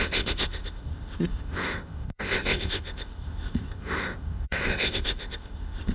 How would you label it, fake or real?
fake